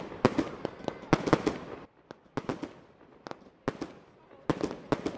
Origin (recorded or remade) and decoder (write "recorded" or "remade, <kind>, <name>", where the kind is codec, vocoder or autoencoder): recorded